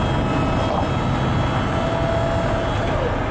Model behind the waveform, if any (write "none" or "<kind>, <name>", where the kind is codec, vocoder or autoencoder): none